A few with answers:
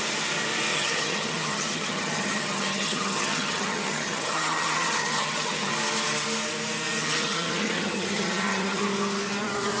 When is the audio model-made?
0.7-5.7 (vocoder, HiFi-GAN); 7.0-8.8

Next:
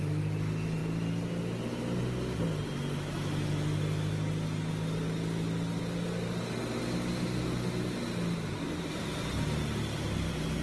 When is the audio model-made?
none

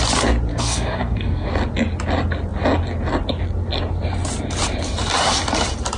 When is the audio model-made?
0.5-1.5 (codec, SNAC)

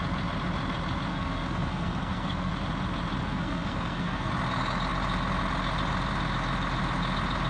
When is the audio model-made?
1.1-2.5 (codec, SNAC); 3.2-4.3

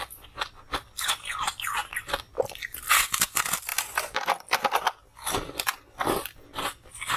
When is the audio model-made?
none

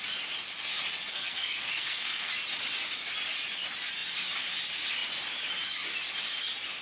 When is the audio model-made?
1.1-2.3 (codec, SNAC)

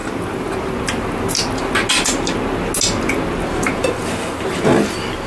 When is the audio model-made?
none